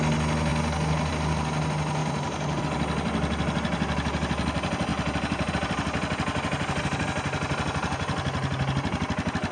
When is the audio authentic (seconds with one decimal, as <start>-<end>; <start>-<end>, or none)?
0.0-2.0; 2.6-4.9; 5.5-9.5

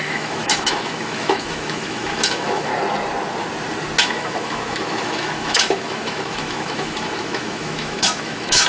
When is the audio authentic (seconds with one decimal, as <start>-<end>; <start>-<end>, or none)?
2.7-4.0